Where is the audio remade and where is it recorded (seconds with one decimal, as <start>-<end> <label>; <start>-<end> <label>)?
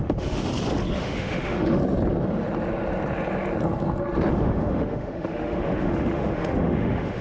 0.0-0.5 remade; 0.5-1.0 recorded; 1.0-1.8 remade; 1.8-4.3 recorded; 4.3-7.2 remade